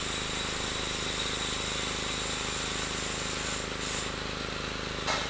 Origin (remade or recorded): recorded